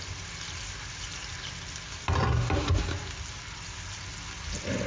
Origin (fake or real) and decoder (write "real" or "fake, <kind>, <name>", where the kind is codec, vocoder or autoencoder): real